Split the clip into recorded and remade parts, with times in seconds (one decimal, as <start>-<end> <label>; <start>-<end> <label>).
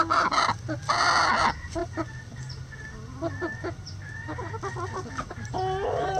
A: 0.0-6.2 recorded